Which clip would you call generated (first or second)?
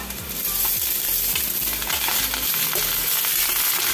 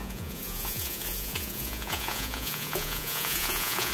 second